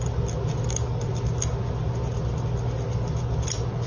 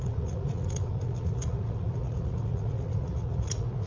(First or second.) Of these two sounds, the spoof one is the second